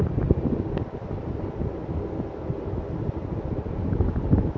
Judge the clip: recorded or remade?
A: recorded